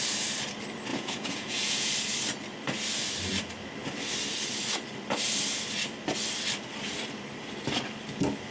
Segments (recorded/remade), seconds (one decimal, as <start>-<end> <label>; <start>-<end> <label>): 0.0-0.9 recorded; 0.9-1.9 remade; 1.9-8.5 recorded